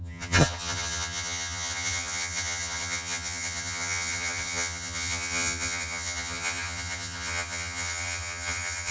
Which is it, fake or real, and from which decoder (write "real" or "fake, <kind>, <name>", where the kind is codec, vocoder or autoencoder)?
fake, vocoder, HiFi-GAN